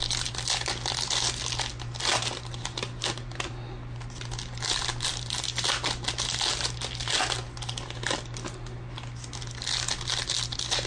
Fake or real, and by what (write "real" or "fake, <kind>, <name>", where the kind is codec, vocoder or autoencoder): real